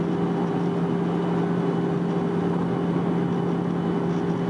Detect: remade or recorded recorded